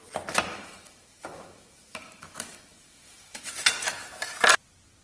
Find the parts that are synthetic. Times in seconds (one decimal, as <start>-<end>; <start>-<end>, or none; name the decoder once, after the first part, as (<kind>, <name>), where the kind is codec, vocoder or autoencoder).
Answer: 0.5-3.5 (autoencoder, DAC-VAE)